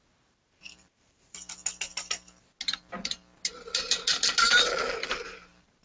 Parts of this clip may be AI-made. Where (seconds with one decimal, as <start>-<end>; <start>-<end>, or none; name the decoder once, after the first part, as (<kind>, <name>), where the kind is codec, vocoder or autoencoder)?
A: 0.0-1.6 (vocoder, BigVGAN v2); 5.1-5.8